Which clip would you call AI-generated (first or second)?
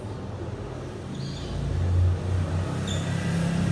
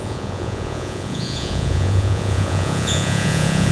second